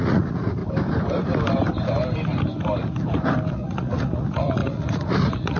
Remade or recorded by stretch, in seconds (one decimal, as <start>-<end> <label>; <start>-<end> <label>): 0.0-0.6 remade; 0.6-3.5 recorded; 3.5-5.6 remade